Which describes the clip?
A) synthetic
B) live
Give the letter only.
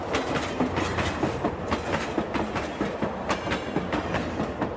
B